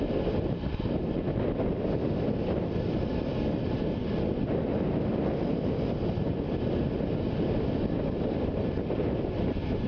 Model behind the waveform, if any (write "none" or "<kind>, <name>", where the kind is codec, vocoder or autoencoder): none